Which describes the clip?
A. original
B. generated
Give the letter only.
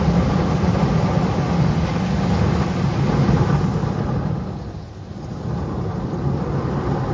A